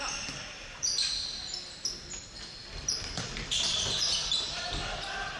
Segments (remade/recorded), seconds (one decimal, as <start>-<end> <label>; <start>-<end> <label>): 0.0-2.6 recorded; 2.6-4.6 remade; 4.6-5.4 recorded